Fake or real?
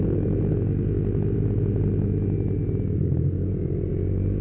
real